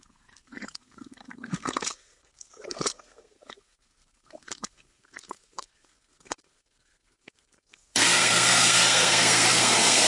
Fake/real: fake